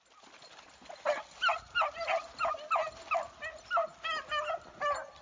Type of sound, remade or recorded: recorded